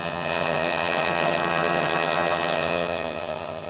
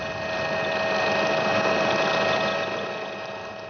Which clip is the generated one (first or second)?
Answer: first